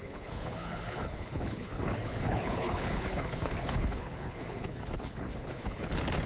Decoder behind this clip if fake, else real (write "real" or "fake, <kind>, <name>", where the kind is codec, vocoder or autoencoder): fake, codec, HILCodec